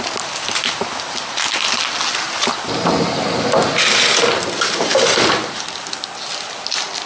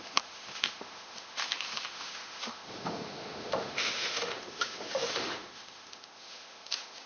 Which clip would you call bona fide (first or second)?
first